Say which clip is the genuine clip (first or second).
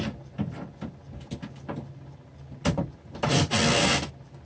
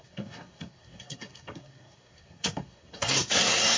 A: first